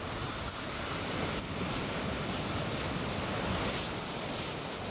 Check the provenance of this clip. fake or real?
real